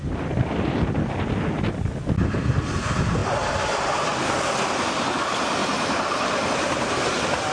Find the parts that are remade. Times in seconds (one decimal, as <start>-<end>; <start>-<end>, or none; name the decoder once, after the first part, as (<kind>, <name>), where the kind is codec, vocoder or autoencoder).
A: 3.2-4.6 (vocoder, BigVGAN v2)